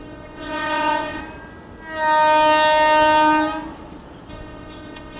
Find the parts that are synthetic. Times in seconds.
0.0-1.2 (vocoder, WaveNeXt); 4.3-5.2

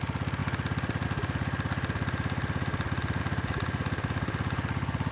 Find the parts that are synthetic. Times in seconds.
none

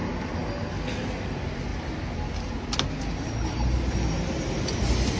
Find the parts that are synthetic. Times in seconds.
none

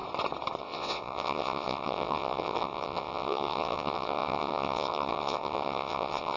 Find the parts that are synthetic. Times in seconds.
0.6-6.4 (vocoder, WaveNeXt)